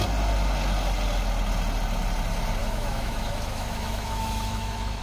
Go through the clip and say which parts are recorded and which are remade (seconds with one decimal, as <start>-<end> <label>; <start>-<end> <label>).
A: 0.0-2.6 recorded; 2.6-5.0 remade